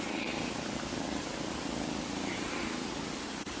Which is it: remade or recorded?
recorded